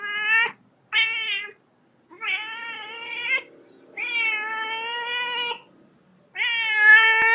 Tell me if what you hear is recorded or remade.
recorded